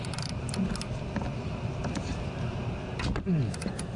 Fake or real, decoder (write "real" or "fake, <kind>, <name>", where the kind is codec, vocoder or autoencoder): real